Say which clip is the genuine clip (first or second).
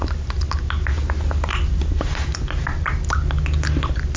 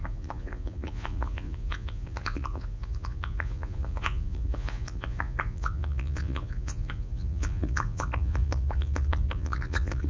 first